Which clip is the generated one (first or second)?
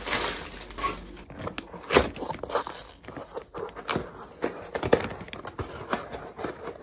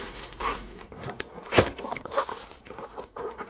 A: second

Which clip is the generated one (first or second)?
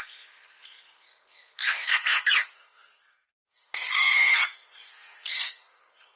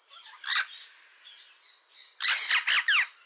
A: first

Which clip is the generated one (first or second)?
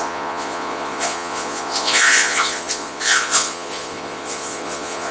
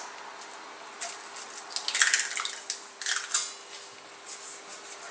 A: first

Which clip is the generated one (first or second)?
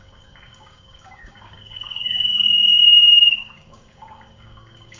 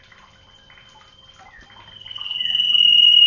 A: first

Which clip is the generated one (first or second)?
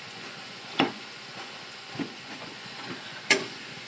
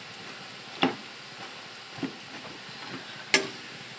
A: first